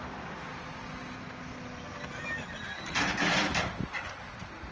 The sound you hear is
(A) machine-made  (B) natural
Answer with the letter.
B